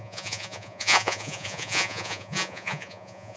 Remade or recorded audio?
remade